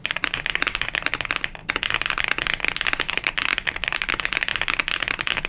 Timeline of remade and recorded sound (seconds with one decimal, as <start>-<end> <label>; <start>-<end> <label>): 0.0-3.5 recorded; 3.5-4.1 remade; 4.1-5.5 recorded